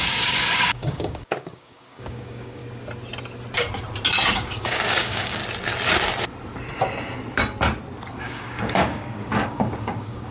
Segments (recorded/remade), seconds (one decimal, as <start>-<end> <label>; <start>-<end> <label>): 0.0-2.6 remade; 2.6-4.1 recorded; 4.1-5.4 remade; 5.4-8.2 recorded; 8.2-10.3 remade